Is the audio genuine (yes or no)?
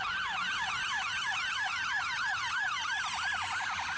yes